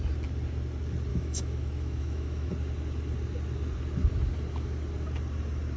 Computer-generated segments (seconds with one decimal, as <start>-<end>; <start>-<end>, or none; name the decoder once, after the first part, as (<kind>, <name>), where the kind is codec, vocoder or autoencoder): 1.1-2.5 (autoencoder, DAC-VAE)